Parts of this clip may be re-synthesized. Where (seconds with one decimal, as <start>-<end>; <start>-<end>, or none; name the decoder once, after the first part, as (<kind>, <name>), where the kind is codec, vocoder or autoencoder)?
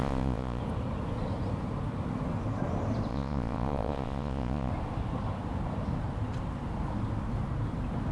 0.0-0.6 (vocoder, Vocos); 3.1-4.7